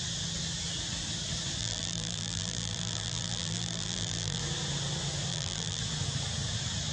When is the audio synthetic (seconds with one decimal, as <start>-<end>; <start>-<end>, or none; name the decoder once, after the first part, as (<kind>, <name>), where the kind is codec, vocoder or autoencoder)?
1.6-4.4 (vocoder, BigVGAN v2); 5.3-5.8